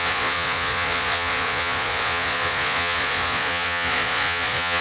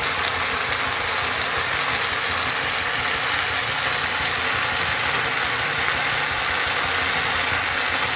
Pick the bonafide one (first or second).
second